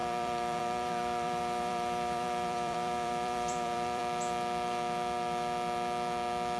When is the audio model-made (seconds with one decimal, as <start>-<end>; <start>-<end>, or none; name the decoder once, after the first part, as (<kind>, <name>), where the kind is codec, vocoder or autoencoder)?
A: 0.0-4.0 (vocoder, BigVGAN v2)